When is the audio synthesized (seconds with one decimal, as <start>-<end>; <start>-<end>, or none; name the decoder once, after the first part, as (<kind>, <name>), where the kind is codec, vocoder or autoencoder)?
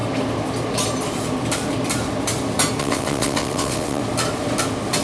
2.8-4.0 (vocoder, WaveNeXt)